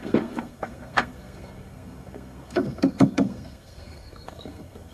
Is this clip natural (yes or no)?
no